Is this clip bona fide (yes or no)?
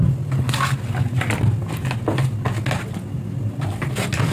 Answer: yes